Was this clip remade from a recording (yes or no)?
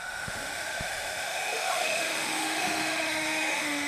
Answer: yes